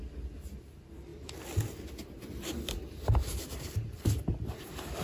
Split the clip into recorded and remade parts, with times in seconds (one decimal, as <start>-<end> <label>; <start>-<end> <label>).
0.0-5.0 recorded